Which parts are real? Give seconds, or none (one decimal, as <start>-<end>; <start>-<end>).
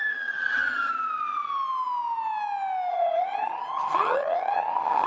0.9-2.9